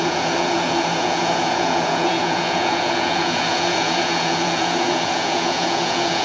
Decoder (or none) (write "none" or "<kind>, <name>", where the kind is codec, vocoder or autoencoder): vocoder, Vocos